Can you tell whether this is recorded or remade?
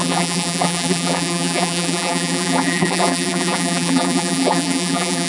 remade